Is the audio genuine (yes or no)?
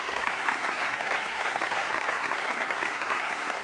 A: no